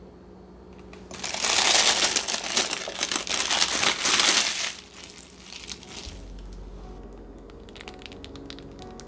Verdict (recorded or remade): recorded